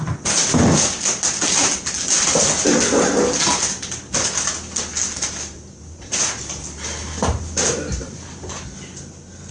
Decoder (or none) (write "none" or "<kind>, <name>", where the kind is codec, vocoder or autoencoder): none